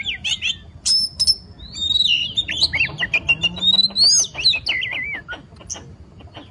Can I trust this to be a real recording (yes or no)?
yes